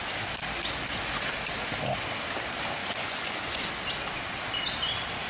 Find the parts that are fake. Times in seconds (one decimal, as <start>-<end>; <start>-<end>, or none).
2.8-3.7